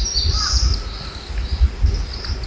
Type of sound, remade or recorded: recorded